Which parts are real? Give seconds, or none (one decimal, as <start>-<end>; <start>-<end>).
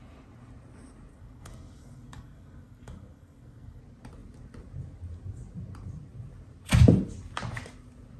0.0-1.1; 3.8-8.2